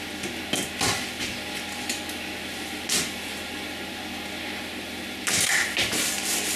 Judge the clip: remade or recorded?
recorded